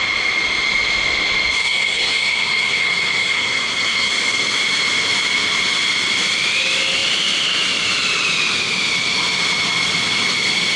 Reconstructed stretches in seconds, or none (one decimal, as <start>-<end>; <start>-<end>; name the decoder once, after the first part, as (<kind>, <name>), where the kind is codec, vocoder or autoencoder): 1.6-4.1 (codec, SNAC)